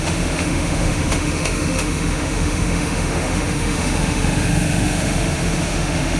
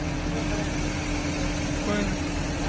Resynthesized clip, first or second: first